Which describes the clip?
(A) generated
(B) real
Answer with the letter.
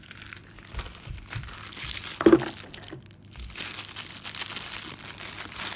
B